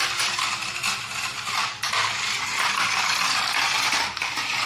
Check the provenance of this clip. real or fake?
fake